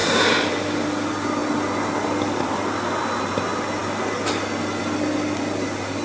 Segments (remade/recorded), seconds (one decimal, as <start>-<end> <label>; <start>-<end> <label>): 0.0-6.0 recorded